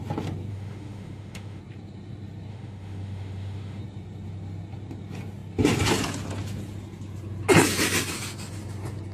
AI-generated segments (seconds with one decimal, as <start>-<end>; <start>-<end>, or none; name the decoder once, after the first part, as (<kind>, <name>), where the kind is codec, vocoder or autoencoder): 0.5-1.6 (autoencoder, DAC-VAE); 2.5-3.8